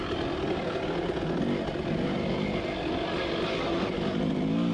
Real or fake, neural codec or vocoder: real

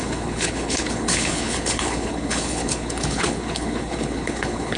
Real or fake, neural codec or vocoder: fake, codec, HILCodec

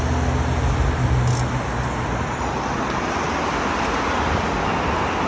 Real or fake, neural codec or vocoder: real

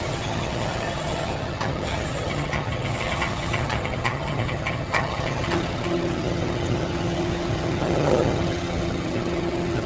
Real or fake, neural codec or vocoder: fake, vocoder, HiFi-GAN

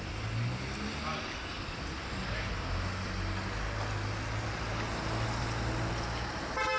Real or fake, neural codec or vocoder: real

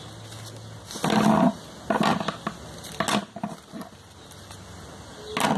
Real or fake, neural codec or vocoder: real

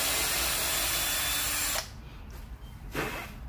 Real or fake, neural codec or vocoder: real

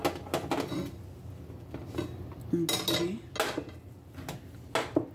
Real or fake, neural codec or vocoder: real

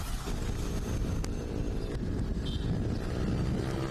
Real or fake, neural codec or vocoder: real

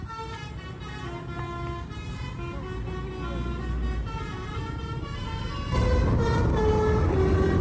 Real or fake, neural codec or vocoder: real